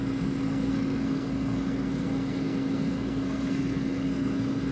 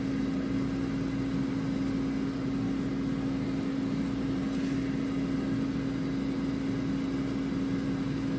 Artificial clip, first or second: first